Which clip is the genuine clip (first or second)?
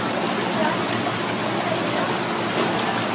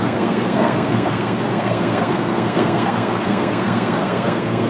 first